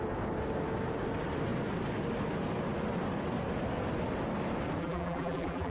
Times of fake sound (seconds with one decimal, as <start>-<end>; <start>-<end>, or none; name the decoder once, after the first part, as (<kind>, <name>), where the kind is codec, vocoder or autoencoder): 4.8-5.7 (vocoder, BigVGAN v2)